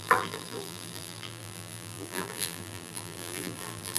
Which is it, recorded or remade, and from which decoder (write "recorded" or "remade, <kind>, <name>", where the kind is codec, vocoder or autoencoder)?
remade, vocoder, BigVGAN v2